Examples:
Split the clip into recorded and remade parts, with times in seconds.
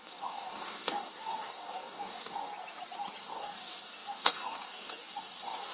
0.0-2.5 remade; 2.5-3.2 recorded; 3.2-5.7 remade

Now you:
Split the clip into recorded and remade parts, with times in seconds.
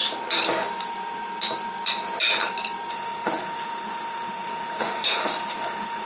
0.0-2.9 recorded; 2.9-6.1 remade